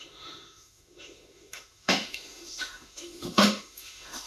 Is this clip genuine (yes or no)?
no